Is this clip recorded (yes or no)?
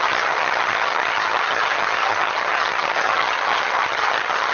no